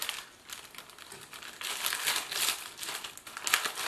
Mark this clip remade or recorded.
recorded